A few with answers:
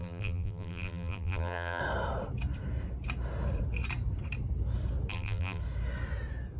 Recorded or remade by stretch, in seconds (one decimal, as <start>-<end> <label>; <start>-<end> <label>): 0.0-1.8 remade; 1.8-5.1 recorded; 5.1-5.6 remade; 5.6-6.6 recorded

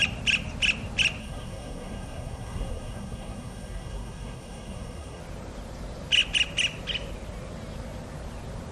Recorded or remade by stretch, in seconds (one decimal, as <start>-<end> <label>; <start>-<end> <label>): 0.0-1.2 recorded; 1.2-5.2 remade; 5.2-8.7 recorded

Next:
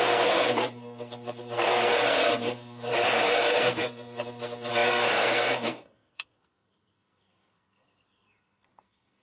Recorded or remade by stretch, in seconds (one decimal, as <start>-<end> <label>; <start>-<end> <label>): 0.0-9.2 remade